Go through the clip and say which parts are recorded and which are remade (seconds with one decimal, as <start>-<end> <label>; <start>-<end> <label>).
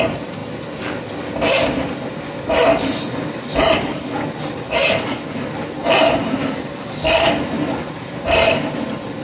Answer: 0.0-6.4 recorded; 6.4-7.3 remade; 7.3-9.2 recorded